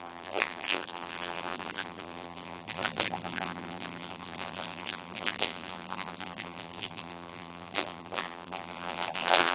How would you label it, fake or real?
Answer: fake